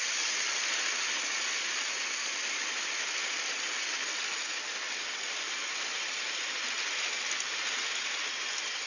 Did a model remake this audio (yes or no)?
no